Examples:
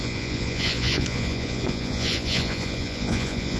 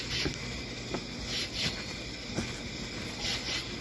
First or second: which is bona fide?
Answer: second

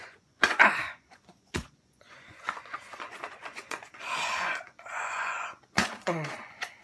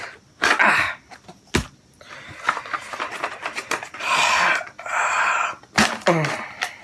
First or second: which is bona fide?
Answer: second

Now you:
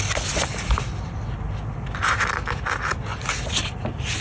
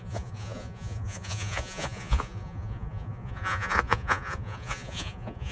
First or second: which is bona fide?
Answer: first